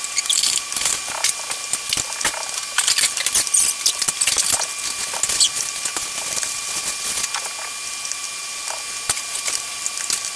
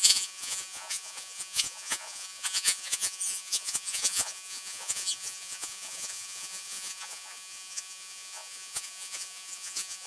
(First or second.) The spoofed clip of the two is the second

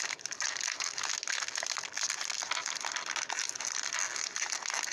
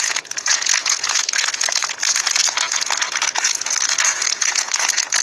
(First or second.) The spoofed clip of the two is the second